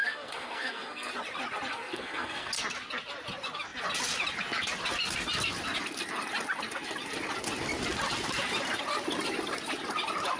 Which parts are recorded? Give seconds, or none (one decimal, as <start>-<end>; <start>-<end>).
1.1-1.7; 2.5-10.4